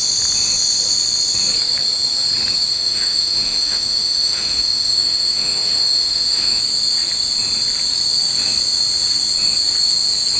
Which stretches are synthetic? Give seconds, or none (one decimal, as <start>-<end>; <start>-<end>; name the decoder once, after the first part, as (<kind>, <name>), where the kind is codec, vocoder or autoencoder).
2.7-6.6 (autoencoder, DAC-VAE)